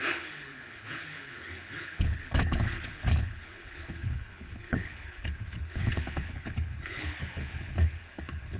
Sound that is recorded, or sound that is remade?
remade